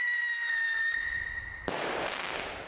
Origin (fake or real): real